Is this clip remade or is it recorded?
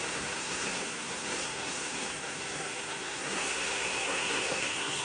remade